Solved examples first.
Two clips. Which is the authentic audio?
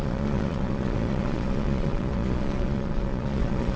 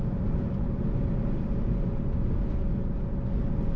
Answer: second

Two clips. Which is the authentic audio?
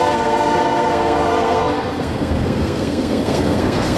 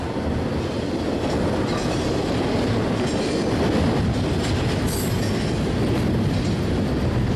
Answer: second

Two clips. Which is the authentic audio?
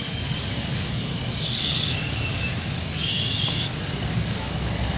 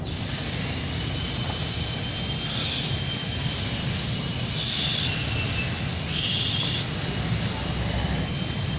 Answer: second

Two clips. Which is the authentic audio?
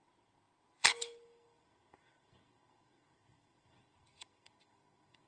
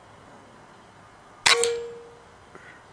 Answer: second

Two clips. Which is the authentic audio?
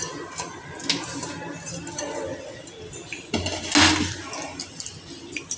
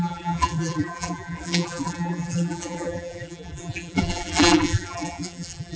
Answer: first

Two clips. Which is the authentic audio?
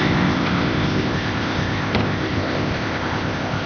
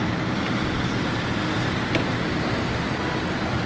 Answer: second